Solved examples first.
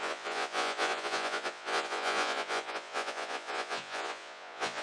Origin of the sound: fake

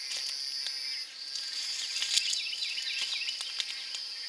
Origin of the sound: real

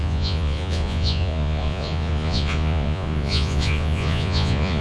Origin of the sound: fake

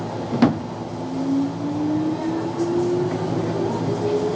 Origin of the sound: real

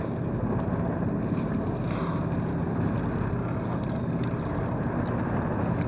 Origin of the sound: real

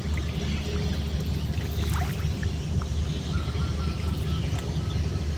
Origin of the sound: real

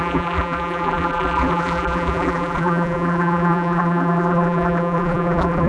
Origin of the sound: fake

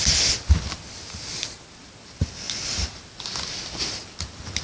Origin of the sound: real